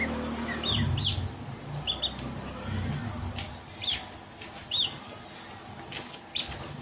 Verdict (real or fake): real